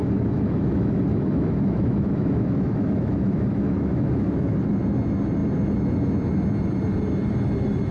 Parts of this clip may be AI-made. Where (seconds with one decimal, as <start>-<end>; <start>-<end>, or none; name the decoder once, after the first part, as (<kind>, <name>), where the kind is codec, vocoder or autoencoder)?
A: 0.0-4.7 (autoencoder, DAC-VAE)